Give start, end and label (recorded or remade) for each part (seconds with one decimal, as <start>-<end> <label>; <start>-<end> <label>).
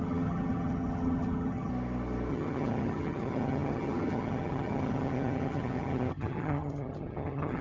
0.0-1.7 remade; 1.7-2.3 recorded; 2.3-7.6 remade